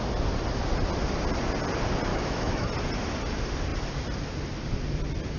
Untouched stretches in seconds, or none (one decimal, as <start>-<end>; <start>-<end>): 0.0-2.1; 2.7-5.4